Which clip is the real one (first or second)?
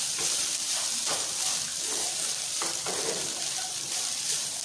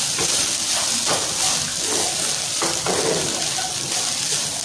second